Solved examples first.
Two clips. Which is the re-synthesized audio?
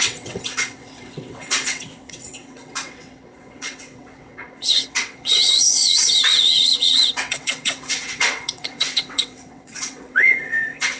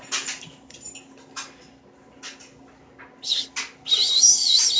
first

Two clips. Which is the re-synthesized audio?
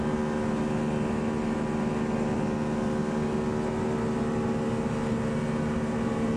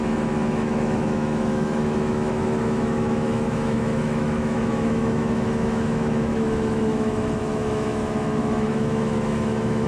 second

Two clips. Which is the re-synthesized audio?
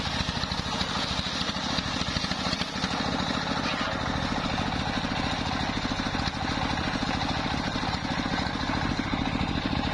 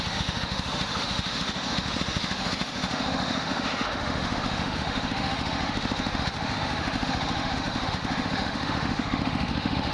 second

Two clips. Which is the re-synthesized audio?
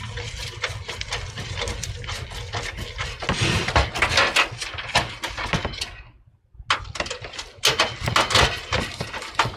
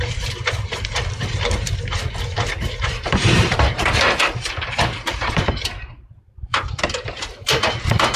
second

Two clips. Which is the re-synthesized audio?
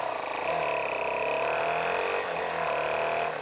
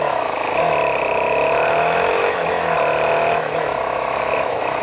second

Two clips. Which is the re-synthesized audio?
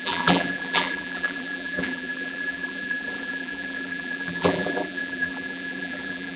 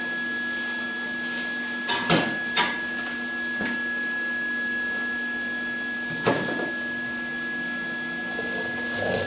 first